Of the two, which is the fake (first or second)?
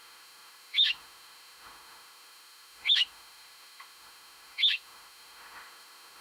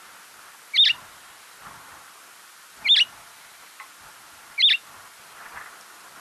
first